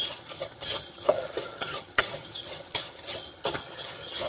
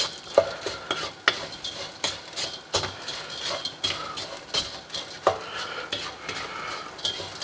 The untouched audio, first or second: second